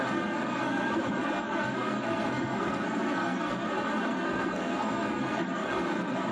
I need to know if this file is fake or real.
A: fake